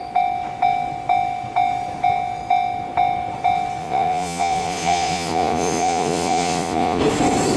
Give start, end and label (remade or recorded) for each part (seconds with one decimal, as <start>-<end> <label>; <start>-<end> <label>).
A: 0.0-3.8 recorded; 3.8-7.0 remade; 7.0-7.6 recorded